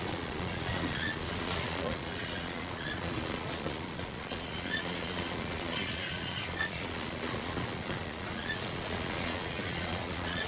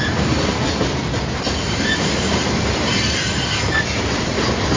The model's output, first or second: first